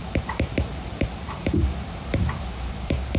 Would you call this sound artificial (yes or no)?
yes